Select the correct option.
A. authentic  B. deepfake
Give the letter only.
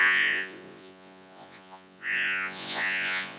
B